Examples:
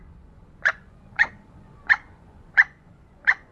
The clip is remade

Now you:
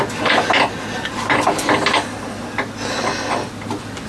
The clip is recorded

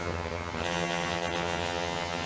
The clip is remade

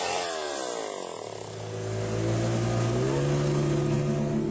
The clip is recorded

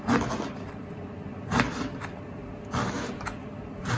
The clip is remade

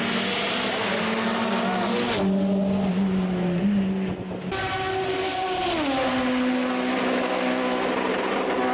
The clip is recorded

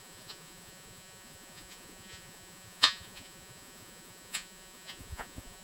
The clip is remade